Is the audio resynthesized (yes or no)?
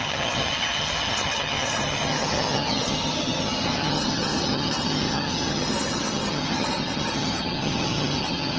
yes